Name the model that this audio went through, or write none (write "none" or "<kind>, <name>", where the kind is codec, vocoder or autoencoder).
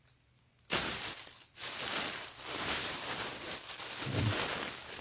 vocoder, BigVGAN v2